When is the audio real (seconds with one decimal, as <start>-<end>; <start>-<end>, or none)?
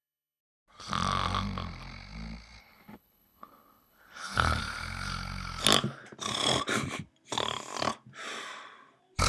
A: 0.4-2.6; 4.6-9.3